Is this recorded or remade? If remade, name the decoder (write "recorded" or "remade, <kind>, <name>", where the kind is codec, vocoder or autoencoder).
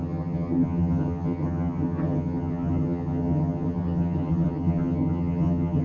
remade, vocoder, HiFi-GAN